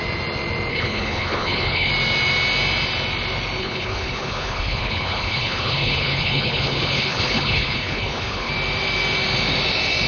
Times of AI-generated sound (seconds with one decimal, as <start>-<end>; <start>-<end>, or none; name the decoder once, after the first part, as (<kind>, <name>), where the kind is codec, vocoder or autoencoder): 0.7-1.9 (codec, HILCodec); 3.6-8.5